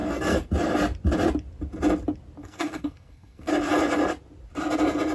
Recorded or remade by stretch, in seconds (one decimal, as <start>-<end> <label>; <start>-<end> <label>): 0.0-0.5 remade; 0.5-2.4 recorded; 2.4-3.5 remade; 3.5-5.1 recorded